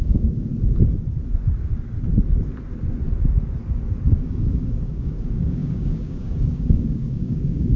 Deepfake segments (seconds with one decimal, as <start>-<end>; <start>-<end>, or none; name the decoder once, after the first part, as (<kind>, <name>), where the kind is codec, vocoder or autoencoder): 0.0-0.5 (codec, DAC); 4.1-7.8